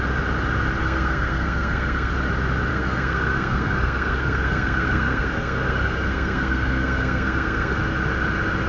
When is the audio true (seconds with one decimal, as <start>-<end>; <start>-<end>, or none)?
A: 0.0-0.8; 2.1-2.7; 7.8-8.7